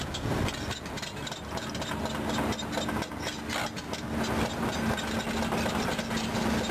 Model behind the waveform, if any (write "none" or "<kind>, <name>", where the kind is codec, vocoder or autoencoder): none